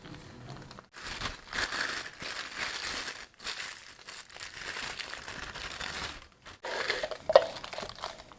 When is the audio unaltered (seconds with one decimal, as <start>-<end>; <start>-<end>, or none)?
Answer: 0.0-8.4